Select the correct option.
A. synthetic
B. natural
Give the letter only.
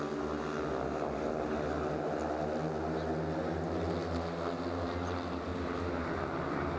B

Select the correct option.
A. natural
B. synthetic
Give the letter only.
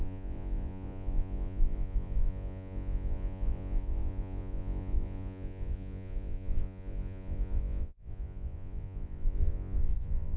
B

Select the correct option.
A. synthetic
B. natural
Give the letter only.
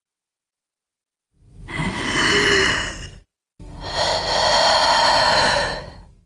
B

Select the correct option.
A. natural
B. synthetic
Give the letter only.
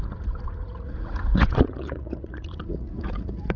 B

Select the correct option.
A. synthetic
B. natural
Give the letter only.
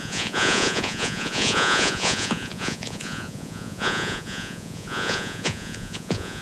A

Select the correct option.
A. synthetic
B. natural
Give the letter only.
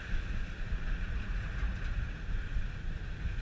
A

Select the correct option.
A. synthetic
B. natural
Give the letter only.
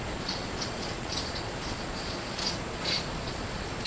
A